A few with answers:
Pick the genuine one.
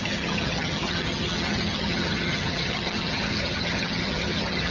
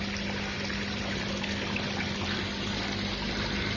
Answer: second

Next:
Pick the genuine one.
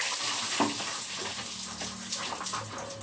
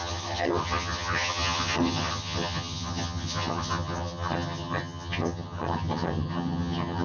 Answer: first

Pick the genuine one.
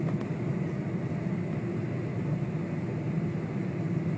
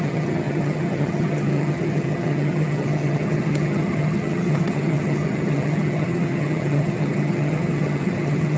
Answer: first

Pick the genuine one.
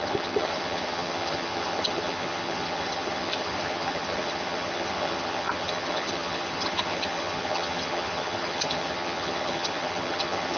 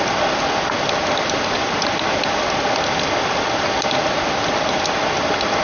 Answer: second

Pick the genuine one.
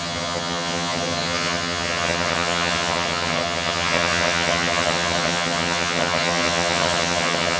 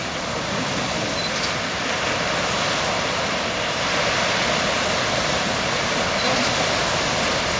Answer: second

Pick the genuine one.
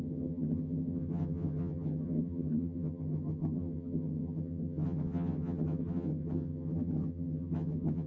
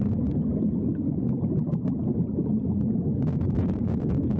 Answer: second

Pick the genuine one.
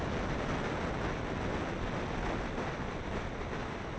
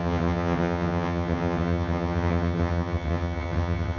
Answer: first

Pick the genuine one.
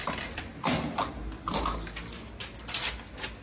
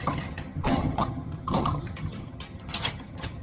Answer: first